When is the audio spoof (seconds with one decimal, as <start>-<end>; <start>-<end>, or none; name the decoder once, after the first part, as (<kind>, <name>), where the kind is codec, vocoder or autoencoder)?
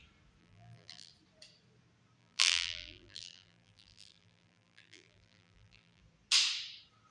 0.4-1.1 (vocoder, BigVGAN v2); 2.2-6.0